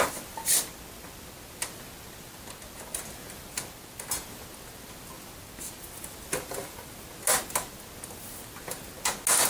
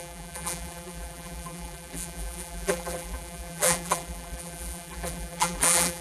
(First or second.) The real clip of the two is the first